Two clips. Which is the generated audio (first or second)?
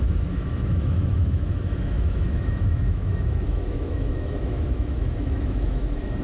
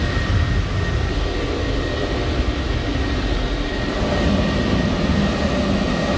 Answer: first